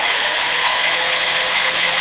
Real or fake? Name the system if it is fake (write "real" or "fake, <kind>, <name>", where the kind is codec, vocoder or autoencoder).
fake, codec, HILCodec